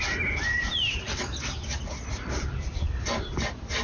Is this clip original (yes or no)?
no